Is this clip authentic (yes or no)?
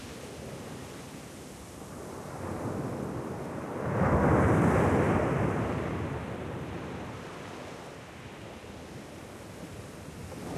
yes